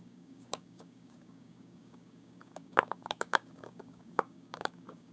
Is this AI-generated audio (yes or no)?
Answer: yes